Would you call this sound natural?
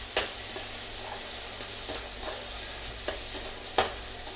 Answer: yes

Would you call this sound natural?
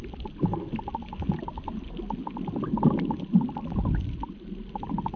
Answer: yes